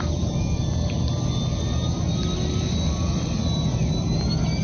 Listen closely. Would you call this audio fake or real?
real